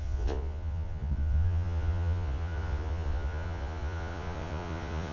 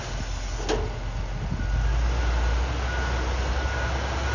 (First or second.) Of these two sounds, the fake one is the first